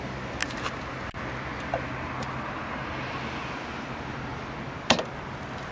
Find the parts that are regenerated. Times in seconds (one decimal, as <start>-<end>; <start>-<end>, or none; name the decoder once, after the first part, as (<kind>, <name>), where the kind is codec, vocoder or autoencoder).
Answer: none